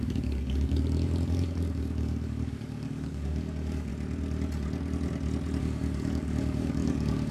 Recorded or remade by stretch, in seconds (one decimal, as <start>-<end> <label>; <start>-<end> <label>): 0.0-3.9 remade; 3.9-5.6 recorded; 5.6-7.3 remade